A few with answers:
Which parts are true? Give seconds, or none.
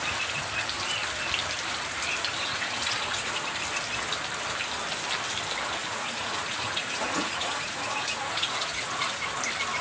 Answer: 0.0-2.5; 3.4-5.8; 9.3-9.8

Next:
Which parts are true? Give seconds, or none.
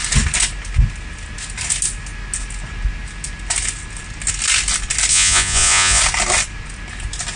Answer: 0.0-5.1; 6.0-7.4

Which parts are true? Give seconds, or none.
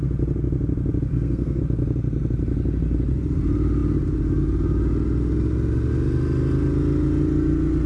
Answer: 0.0-1.1; 1.6-7.9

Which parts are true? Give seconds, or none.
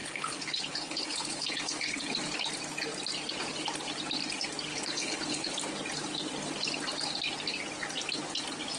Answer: 2.1-4.7; 5.5-8.8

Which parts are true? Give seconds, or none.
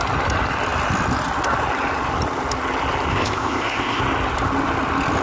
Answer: 0.0-3.1; 4.0-5.2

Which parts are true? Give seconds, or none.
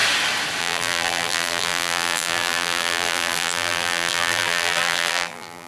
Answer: 0.0-0.6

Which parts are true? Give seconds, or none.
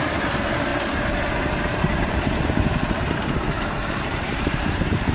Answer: none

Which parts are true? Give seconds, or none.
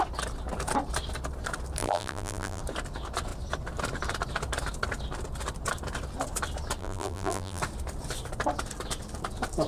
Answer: 0.0-1.8; 2.6-6.8; 7.6-9.7